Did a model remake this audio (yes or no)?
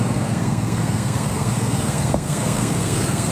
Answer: yes